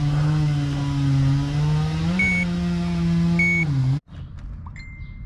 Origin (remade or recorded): recorded